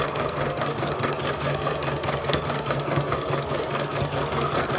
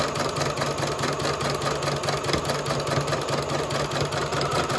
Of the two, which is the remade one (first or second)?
first